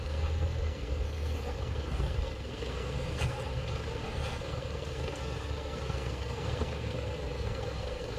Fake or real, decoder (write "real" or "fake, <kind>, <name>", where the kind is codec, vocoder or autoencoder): fake, codec, SNAC